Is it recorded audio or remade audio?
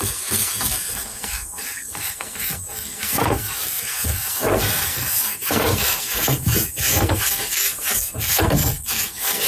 remade